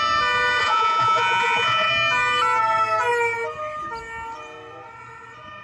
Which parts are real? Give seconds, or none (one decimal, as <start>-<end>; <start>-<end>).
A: 0.0-0.6; 1.9-5.6